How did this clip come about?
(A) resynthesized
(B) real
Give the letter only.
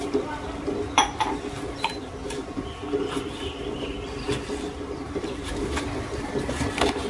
B